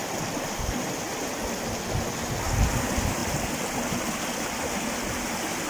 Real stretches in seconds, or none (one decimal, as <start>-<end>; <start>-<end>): 0.0-5.7